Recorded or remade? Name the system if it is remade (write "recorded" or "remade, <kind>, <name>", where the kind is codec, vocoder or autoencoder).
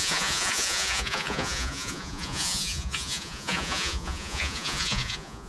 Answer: remade, vocoder, Vocos